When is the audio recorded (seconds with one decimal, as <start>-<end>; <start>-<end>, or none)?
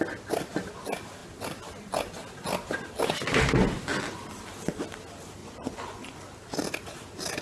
0.0-5.4; 6.2-7.4